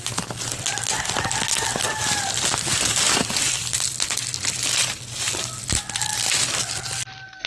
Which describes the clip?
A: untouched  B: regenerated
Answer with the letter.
A